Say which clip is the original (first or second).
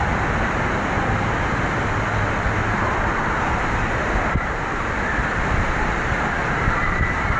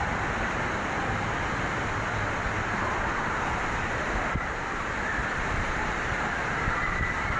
first